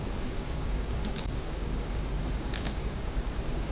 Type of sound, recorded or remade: remade